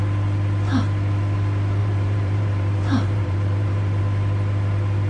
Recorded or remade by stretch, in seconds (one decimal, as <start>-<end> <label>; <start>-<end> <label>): 0.0-1.8 recorded; 1.8-4.0 remade; 4.0-5.1 recorded